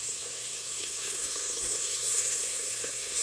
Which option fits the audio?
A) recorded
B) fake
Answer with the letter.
B